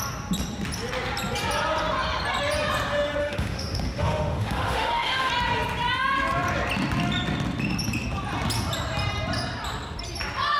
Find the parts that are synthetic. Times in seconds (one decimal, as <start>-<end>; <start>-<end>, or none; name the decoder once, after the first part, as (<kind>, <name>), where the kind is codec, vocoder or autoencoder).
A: 3.2-5.3 (autoencoder, DAC-VAE)